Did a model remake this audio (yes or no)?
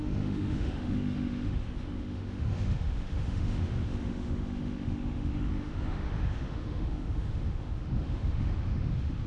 yes